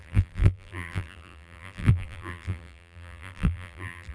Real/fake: fake